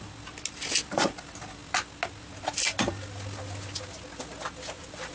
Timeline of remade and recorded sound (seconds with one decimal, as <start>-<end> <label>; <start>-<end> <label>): 0.0-5.1 recorded